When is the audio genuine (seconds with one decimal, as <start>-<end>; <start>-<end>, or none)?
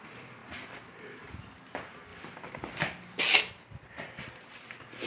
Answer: 0.0-5.1